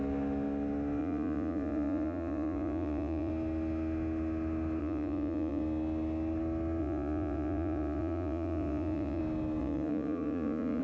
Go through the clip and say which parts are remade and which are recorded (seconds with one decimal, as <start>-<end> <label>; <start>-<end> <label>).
0.0-1.0 recorded; 1.0-3.3 remade; 3.3-4.8 recorded; 4.8-5.6 remade; 5.6-6.8 recorded; 6.8-9.2 remade; 9.2-9.6 recorded; 9.6-10.8 remade